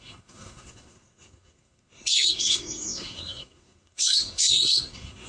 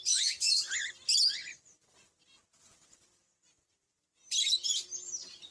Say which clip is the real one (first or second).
second